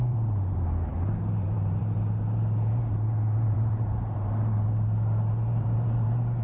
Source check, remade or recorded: remade